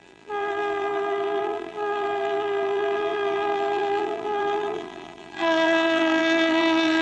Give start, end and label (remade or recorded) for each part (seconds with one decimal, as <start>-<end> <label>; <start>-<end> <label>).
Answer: 0.0-7.0 remade